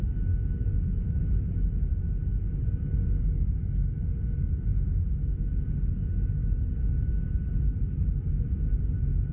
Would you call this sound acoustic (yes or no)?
yes